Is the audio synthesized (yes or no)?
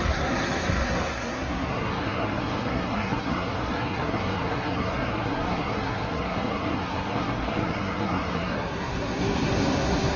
yes